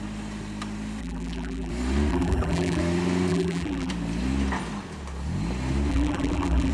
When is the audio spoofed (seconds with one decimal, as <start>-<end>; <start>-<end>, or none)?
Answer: 1.0-1.7; 2.1-2.8; 3.3-3.9; 5.9-6.7